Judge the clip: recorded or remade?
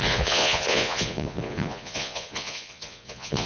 remade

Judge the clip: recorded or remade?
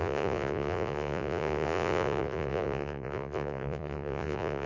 remade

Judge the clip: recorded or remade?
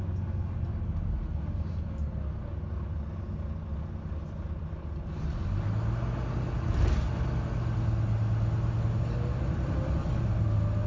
recorded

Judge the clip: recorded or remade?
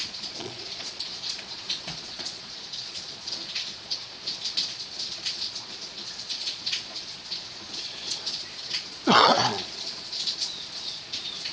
remade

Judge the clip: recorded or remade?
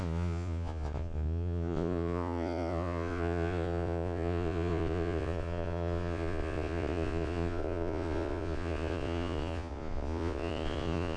remade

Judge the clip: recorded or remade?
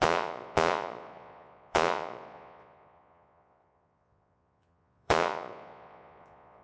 remade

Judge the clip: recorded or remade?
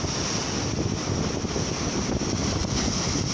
recorded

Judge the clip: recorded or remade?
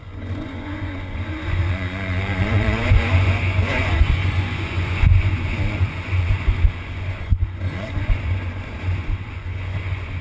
remade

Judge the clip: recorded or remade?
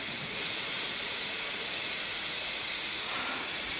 remade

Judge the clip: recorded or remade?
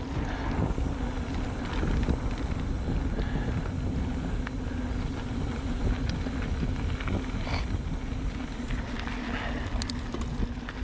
recorded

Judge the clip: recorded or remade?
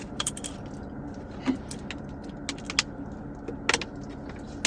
recorded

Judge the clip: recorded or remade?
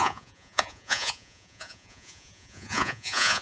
remade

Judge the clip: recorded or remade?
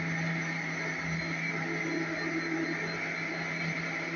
recorded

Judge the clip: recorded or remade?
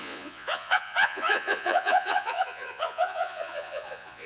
remade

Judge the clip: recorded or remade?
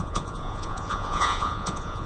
remade